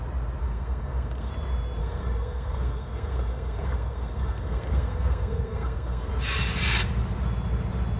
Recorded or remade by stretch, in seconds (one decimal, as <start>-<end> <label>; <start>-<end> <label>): 0.0-0.4 recorded; 0.4-1.3 remade; 1.3-1.8 recorded; 1.8-6.1 remade; 6.1-8.0 recorded